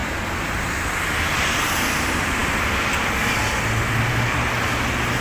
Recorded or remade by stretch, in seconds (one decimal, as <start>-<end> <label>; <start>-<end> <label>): 0.0-5.2 recorded